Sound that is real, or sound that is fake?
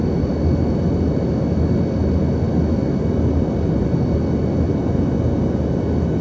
real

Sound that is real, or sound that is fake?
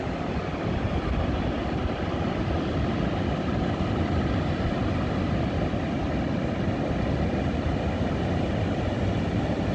real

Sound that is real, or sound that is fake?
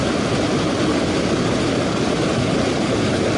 real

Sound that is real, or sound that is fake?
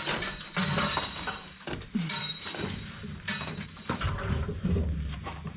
fake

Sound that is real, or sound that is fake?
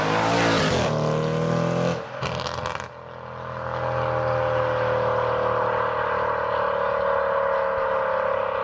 real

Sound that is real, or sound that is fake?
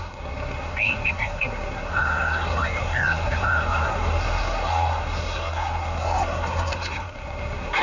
fake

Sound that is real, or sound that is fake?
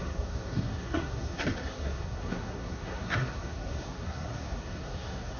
fake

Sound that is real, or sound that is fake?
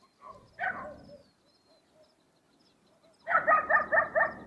real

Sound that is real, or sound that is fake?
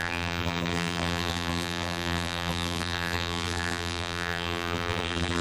fake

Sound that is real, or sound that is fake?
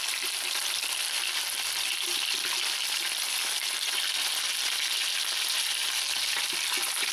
real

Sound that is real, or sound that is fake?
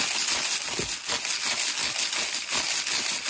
real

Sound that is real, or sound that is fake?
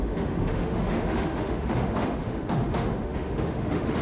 fake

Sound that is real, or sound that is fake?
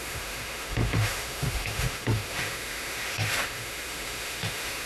fake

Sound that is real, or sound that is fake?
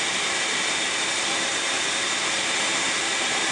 fake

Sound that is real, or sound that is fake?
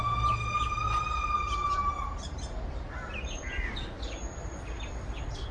real